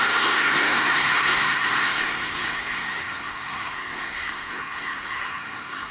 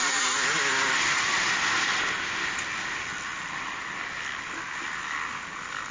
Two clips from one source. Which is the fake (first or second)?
first